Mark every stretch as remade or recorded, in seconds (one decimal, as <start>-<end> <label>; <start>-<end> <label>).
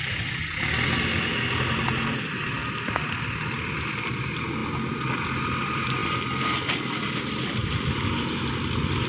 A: 0.0-9.1 recorded